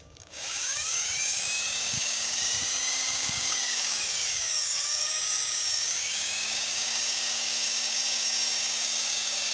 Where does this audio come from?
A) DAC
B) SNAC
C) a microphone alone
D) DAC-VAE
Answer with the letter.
A